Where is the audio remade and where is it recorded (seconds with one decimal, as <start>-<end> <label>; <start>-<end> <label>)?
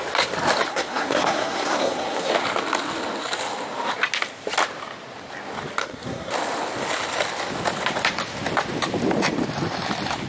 0.0-0.7 recorded; 0.7-2.3 remade; 2.3-5.8 recorded; 5.8-6.3 remade; 6.3-10.3 recorded